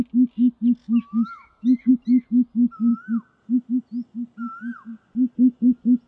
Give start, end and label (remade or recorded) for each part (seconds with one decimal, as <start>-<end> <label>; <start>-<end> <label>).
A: 0.0-0.8 recorded; 0.8-1.9 remade; 1.9-6.1 recorded